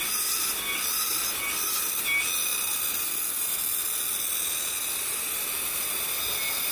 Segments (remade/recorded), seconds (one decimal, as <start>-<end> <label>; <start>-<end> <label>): 0.0-6.7 recorded